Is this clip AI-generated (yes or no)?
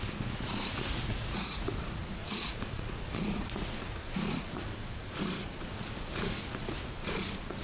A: yes